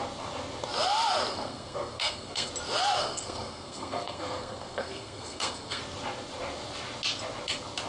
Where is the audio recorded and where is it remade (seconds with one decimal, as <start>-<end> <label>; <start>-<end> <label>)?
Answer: 0.0-1.3 recorded; 1.3-2.5 remade; 2.5-3.0 recorded; 3.0-5.8 remade; 5.8-7.9 recorded

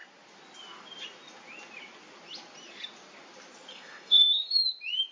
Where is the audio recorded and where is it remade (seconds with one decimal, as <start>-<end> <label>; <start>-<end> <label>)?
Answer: 0.0-3.7 recorded; 3.7-4.5 remade; 4.5-5.1 recorded

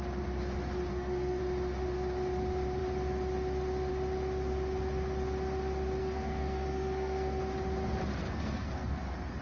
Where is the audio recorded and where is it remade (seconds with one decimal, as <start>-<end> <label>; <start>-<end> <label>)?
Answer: 0.0-0.9 recorded; 0.9-1.4 remade; 1.4-6.0 recorded; 6.0-7.4 remade; 7.4-8.2 recorded; 8.2-9.0 remade; 9.0-9.4 recorded

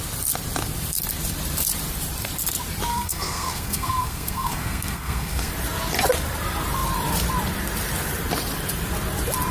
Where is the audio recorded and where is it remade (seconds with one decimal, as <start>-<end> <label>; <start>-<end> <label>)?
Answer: 0.0-2.9 recorded; 2.9-5.5 remade; 5.5-9.5 recorded

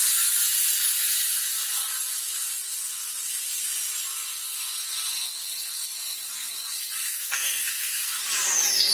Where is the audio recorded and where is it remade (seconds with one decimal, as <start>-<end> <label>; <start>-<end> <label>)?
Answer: 0.0-7.1 recorded; 7.1-8.2 remade; 8.2-8.9 recorded

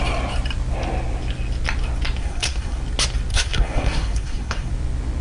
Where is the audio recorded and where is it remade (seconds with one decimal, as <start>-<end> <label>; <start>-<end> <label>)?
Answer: 0.0-2.2 recorded; 2.2-2.8 remade; 2.8-3.3 recorded; 3.3-4.7 remade; 4.7-5.2 recorded

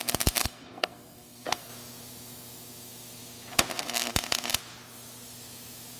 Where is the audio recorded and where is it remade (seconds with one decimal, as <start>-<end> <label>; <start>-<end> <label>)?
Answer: 0.0-0.4 recorded; 0.4-1.7 remade; 1.7-6.0 recorded